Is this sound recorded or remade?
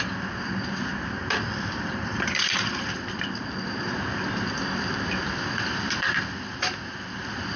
remade